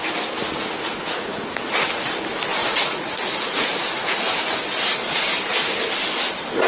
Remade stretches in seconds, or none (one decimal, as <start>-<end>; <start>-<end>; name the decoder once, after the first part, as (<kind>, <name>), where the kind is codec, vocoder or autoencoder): 2.6-4.2 (vocoder, Vocos)